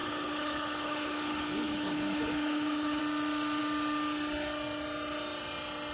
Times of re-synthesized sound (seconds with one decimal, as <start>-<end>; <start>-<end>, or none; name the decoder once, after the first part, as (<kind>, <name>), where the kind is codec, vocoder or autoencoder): 0.0-3.0 (codec, HILCodec)